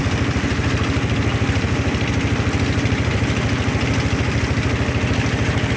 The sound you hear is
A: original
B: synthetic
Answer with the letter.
A